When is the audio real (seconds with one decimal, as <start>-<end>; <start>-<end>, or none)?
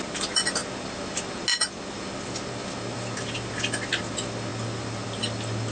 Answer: 0.0-5.7